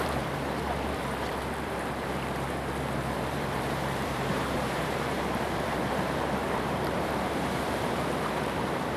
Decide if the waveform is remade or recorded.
remade